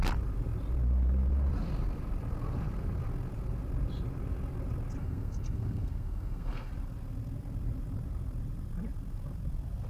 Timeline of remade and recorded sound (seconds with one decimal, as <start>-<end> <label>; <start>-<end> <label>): 0.0-5.0 recorded; 5.0-6.7 remade; 6.7-9.9 recorded